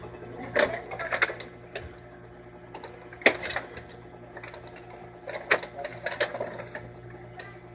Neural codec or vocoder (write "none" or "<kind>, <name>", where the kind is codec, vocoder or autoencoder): none